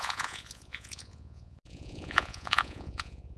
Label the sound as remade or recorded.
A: remade